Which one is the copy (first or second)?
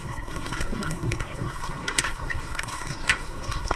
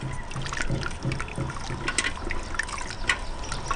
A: first